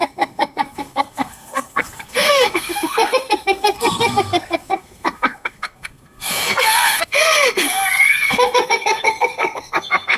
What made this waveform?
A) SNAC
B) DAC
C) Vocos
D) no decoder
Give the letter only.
A